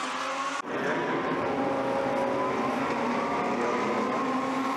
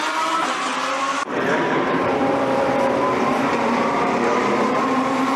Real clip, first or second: first